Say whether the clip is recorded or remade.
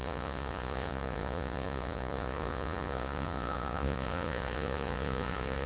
remade